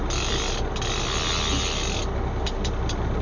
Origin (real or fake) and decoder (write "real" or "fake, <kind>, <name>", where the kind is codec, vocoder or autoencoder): real